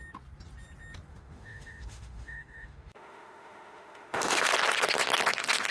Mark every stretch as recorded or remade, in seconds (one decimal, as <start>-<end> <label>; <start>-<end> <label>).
0.0-1.1 recorded; 1.1-4.5 remade; 4.5-5.7 recorded